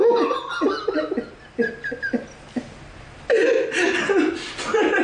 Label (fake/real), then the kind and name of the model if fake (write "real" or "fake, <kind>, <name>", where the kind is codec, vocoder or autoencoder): real